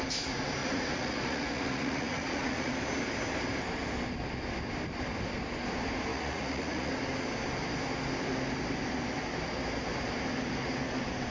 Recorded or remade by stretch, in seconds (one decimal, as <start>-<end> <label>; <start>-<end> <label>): 0.0-0.6 recorded; 0.6-2.7 remade; 2.7-6.1 recorded; 6.1-6.9 remade; 6.9-11.3 recorded